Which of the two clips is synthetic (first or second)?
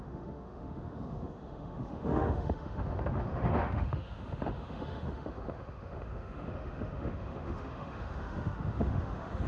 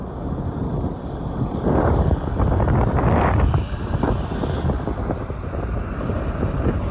first